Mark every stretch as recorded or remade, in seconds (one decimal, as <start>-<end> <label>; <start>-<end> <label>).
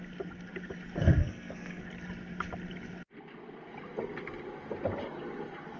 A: 0.0-1.2 recorded; 1.2-1.8 remade; 1.8-5.8 recorded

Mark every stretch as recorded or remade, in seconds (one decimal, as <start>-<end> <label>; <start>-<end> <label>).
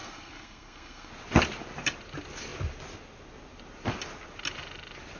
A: 0.0-1.1 remade; 1.1-5.2 recorded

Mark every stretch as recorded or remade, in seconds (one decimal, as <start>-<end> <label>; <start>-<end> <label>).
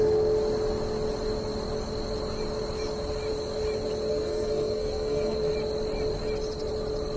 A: 0.0-4.1 recorded; 4.1-5.5 remade; 5.5-7.2 recorded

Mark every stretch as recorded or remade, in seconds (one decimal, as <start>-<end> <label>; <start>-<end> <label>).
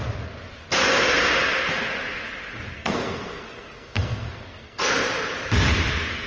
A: 0.0-2.7 recorded; 2.7-4.8 remade; 4.8-6.3 recorded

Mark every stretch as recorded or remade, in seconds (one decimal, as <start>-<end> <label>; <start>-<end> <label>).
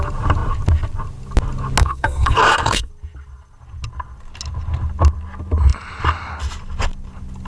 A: 0.0-1.8 recorded; 1.8-2.9 remade; 2.9-7.5 recorded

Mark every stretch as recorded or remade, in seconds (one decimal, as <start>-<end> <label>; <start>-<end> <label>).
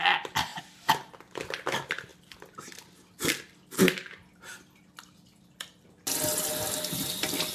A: 0.0-7.5 recorded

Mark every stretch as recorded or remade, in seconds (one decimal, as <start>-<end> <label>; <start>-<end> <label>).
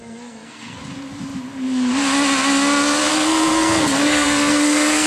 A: 0.0-0.8 remade; 0.8-3.1 recorded; 3.1-5.1 remade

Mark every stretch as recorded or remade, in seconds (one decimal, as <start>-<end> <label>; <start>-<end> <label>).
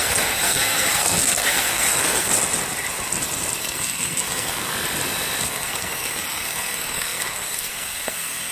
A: 0.0-2.3 remade; 2.3-3.6 recorded; 3.6-4.7 remade; 4.7-5.4 recorded; 5.4-8.5 remade